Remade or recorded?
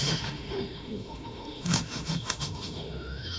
remade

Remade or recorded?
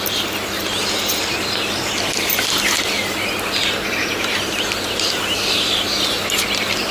recorded